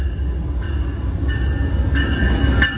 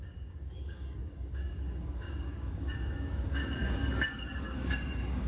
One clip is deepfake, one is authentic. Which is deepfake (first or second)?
second